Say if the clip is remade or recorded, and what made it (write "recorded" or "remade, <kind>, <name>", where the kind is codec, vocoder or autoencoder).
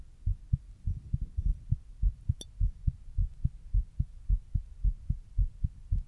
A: recorded